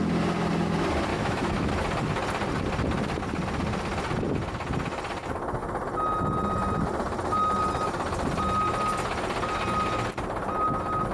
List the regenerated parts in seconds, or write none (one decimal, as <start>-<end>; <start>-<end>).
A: 1.1-1.7